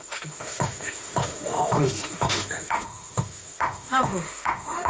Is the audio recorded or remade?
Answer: remade